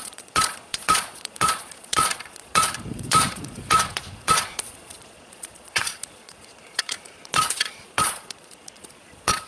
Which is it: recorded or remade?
remade